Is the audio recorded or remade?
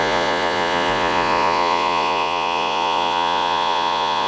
remade